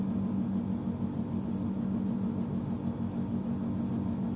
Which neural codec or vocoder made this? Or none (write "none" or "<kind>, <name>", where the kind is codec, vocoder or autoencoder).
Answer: none